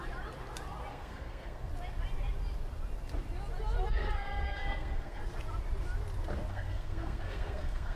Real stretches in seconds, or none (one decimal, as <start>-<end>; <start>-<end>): 0.0-0.9; 1.7-3.9; 5.2-6.5